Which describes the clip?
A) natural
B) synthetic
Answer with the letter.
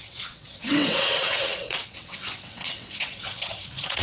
B